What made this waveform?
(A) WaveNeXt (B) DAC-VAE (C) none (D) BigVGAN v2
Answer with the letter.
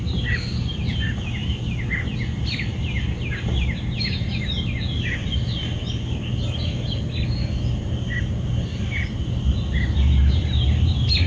C